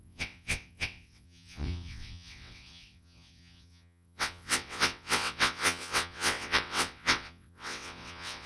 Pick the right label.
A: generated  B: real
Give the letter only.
A